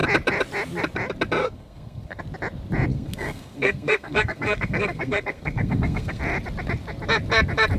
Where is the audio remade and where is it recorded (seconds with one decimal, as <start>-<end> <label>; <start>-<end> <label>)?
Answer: 0.0-1.4 recorded; 1.4-2.2 remade; 2.2-2.9 recorded; 2.9-6.2 remade; 6.2-7.8 recorded